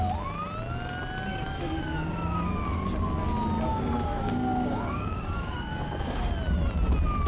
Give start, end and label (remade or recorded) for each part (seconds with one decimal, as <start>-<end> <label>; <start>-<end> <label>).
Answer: 0.0-1.3 recorded; 1.3-2.9 remade; 2.9-3.7 recorded; 3.7-6.3 remade; 6.3-7.3 recorded